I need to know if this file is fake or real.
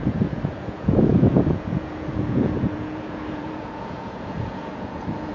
fake